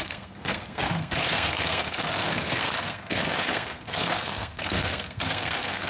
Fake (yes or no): yes